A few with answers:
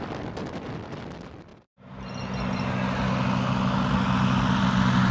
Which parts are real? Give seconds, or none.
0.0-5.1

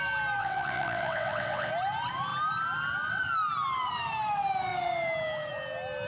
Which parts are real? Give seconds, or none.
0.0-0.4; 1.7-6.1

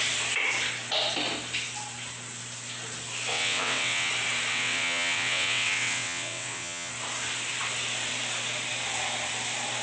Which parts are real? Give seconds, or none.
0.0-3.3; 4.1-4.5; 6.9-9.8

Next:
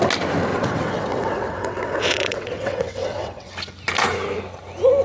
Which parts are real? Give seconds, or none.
0.0-0.5; 3.5-5.0

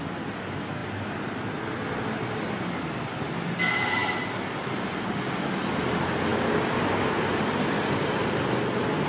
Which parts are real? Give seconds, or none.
0.0-9.1

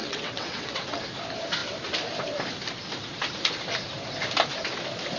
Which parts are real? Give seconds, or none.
1.0-5.2

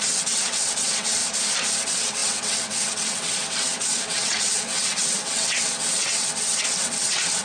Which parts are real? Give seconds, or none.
1.2-1.8

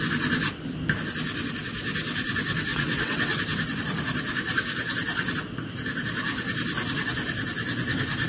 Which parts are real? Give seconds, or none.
0.0-2.7; 3.4-8.3